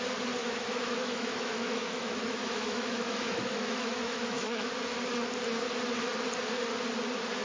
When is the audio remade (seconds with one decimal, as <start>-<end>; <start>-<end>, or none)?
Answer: 0.4-4.7